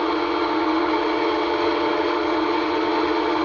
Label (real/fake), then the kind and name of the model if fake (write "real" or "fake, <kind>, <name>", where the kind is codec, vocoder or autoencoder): fake, vocoder, WaveNeXt